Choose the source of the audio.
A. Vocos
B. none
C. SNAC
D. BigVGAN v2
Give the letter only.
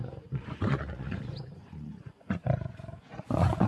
A